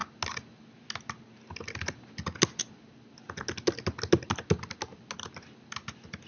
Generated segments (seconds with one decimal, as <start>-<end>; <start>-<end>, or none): none

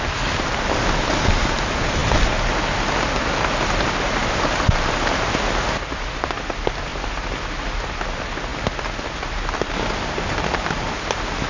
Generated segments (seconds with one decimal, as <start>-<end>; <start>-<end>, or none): 6.9-7.7

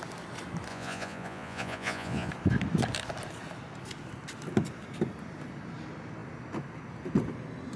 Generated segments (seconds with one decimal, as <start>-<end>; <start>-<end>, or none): 0.7-2.3